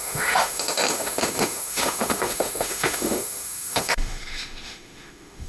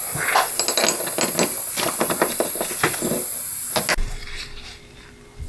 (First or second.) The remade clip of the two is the first